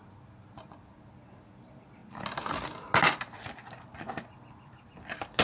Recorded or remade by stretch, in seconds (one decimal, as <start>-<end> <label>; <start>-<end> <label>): 0.0-5.4 recorded